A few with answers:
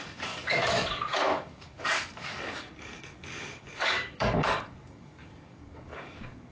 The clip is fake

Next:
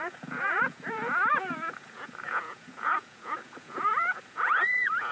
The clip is fake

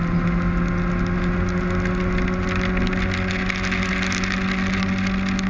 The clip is real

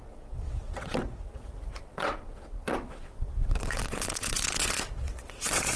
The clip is fake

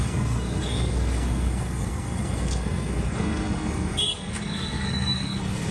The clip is fake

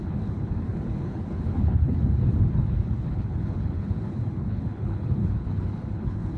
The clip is fake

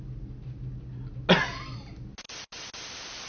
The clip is real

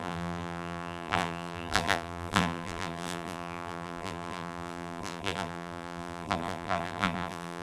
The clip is fake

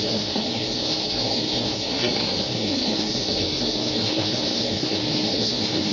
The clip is fake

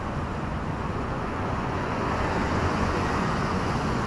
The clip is fake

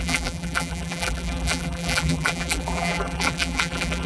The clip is fake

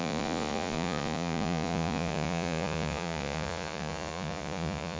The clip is fake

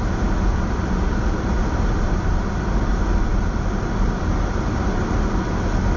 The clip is real